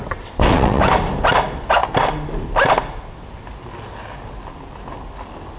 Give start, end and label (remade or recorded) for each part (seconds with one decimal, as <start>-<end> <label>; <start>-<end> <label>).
0.0-0.8 remade; 0.8-5.6 recorded